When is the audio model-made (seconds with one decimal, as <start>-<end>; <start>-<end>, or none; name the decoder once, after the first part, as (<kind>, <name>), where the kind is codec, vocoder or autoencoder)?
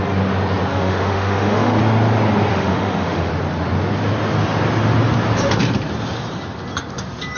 0.7-1.8 (autoencoder, DAC-VAE); 2.5-3.3